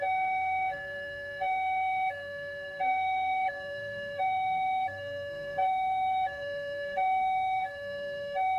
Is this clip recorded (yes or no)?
no